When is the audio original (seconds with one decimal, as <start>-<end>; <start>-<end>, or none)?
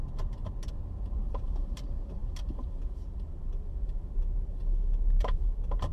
0.0-0.7; 4.6-5.2